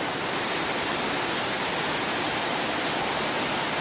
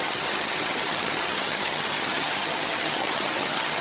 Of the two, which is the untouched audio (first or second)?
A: first